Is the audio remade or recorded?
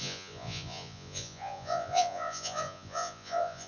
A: remade